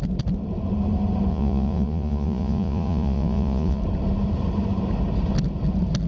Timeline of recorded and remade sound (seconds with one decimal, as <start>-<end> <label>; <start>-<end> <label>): 0.0-1.3 recorded; 1.3-3.8 remade; 3.8-6.1 recorded